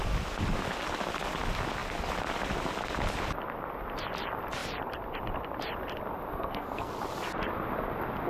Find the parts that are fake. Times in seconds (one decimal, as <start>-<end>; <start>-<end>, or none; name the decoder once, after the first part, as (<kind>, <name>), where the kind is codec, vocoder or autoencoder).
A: 6.3-6.9 (codec, SNAC)